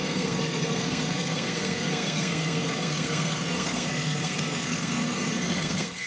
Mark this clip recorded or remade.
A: remade